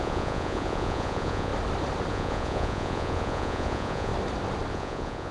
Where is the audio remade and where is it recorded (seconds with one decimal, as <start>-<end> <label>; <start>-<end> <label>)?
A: 0.0-1.5 remade; 1.5-2.1 recorded; 2.1-4.1 remade; 4.1-4.7 recorded; 4.7-5.3 remade